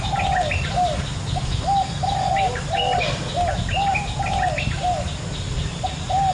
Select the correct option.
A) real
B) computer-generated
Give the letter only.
A